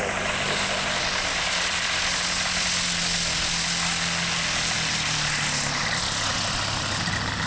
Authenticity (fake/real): real